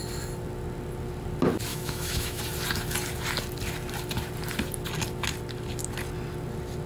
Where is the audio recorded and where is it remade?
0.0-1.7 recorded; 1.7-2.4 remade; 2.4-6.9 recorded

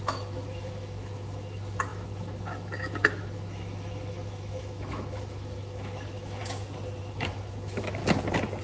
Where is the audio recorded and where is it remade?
0.0-6.4 remade; 6.4-7.0 recorded; 7.0-8.0 remade; 8.0-8.6 recorded

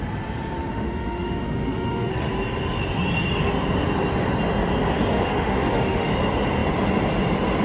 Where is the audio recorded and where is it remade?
0.0-0.7 recorded; 0.7-2.1 remade; 2.1-5.1 recorded; 5.1-6.1 remade; 6.1-7.6 recorded

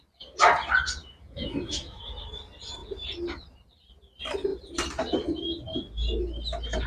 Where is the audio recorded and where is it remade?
0.0-1.0 recorded; 1.0-2.0 remade; 2.0-6.9 recorded

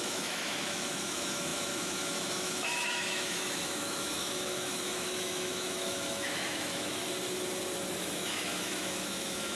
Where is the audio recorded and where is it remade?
0.0-7.0 remade; 7.0-8.0 recorded; 8.0-9.6 remade